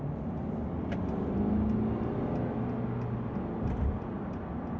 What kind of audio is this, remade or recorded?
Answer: recorded